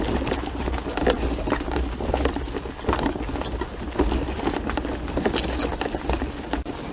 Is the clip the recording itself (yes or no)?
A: yes